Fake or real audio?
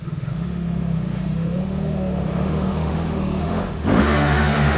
fake